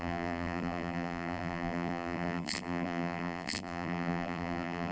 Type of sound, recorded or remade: remade